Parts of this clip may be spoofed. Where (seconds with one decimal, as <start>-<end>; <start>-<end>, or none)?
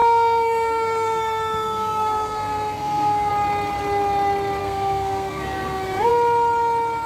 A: 0.0-3.3; 4.6-6.1